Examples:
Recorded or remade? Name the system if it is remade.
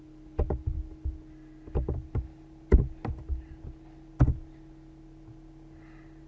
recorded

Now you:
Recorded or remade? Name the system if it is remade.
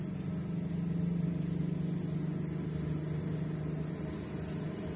recorded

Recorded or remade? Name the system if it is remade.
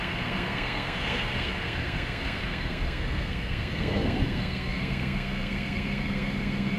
remade, codec, SNAC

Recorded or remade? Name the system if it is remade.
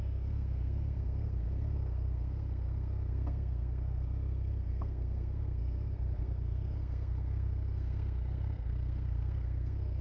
remade, codec, SNAC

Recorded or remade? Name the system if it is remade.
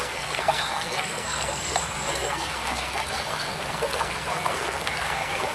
remade, codec, SNAC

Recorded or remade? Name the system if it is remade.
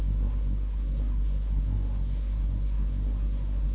remade, codec, SNAC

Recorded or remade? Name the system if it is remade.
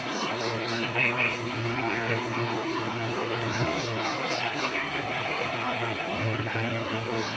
remade, codec, SNAC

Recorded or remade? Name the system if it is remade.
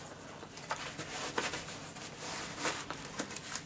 recorded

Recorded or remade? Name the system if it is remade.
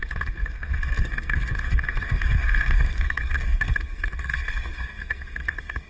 remade, codec, SNAC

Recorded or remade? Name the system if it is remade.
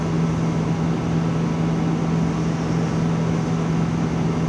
recorded